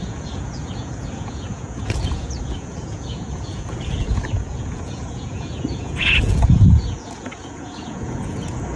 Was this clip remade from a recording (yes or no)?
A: yes